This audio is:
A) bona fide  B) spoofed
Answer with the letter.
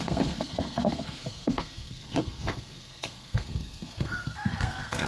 B